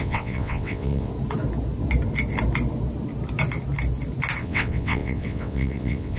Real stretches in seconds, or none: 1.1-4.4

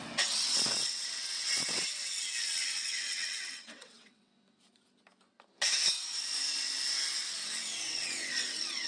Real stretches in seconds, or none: 4.3-7.3

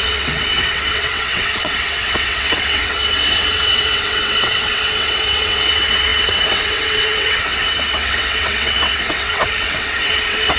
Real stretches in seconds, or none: none

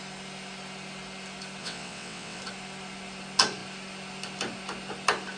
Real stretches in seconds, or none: 0.0-1.6; 2.4-5.4

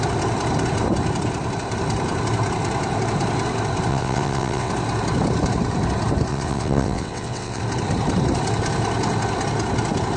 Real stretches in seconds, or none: 0.0-3.9; 4.7-6.3; 7.6-10.2

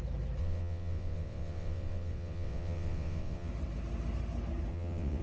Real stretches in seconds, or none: 0.0-0.4; 3.5-4.7

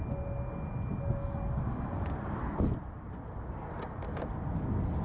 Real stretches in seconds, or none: 0.0-5.0